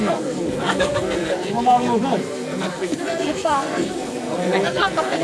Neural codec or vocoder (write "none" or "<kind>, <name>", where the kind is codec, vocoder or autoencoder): codec, SNAC